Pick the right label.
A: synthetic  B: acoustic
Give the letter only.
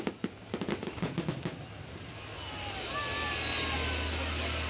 B